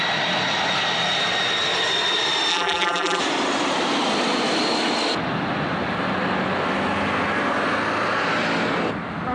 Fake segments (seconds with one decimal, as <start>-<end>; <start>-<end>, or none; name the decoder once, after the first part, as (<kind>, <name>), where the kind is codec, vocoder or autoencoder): 2.5-3.2 (vocoder, BigVGAN v2)